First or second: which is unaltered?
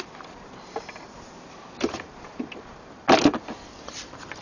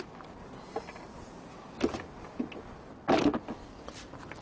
second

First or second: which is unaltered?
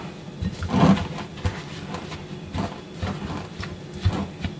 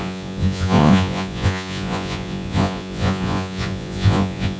first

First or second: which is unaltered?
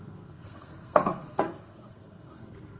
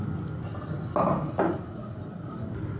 second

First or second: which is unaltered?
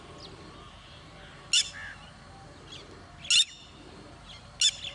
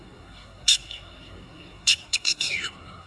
first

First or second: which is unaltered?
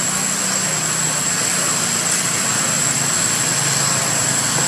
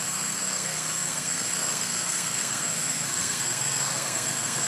first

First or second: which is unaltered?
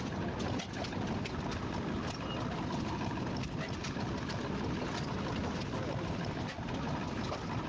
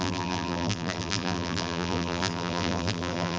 first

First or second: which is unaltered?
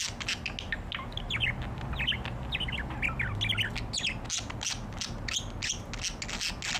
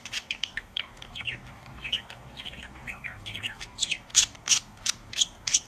first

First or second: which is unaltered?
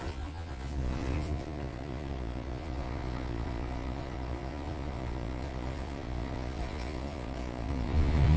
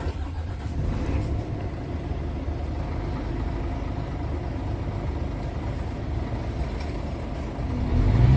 second